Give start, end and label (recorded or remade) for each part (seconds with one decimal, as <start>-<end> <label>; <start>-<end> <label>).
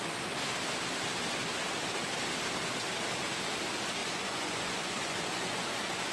0.0-4.0 recorded; 4.0-6.1 remade